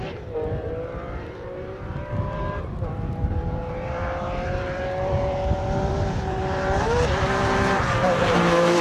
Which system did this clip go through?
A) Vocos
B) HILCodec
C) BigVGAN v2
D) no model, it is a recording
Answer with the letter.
C